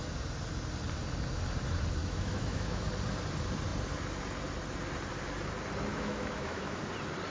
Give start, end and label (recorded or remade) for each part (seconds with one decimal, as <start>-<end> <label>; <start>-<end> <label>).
0.0-2.0 recorded; 2.0-2.8 remade; 2.8-5.9 recorded; 5.9-6.8 remade; 6.8-7.3 recorded